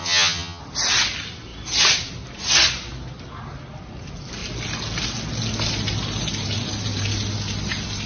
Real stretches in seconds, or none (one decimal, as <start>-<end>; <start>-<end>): 0.6-8.1